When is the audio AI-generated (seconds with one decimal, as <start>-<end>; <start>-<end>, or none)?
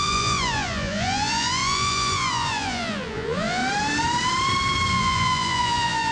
0.0-3.6; 4.9-6.1